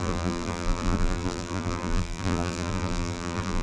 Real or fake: fake